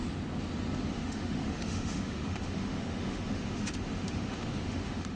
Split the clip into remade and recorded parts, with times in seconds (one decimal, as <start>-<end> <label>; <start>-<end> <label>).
0.0-0.9 recorded; 0.9-5.2 remade